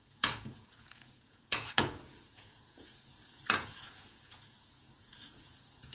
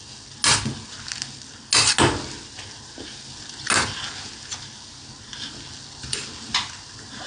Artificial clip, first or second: first